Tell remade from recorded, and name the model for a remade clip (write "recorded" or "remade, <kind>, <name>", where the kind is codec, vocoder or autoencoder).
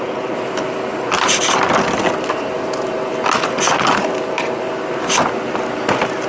recorded